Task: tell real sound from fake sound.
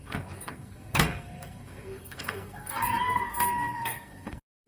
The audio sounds fake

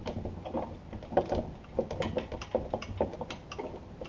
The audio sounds real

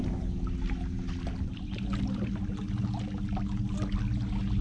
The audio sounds real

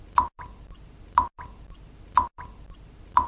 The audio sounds real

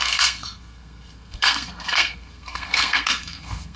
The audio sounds fake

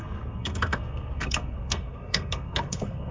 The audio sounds fake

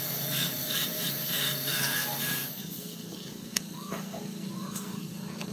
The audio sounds fake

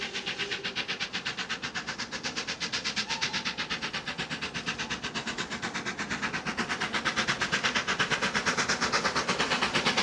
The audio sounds real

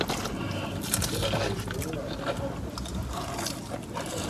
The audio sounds real